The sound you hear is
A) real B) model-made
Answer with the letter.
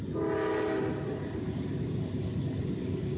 A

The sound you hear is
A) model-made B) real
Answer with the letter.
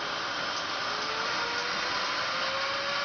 B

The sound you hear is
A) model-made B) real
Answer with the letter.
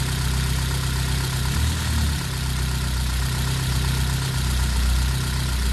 B